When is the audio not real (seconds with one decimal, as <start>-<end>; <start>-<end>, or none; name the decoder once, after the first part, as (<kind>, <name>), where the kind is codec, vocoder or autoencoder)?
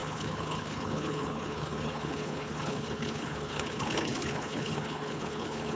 0.0-5.8 (codec, HILCodec)